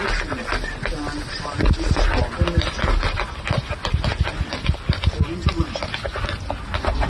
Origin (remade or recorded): recorded